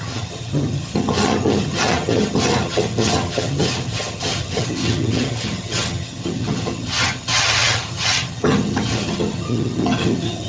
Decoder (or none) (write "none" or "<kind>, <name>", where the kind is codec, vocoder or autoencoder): vocoder, HiFi-GAN